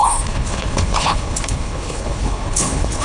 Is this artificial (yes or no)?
yes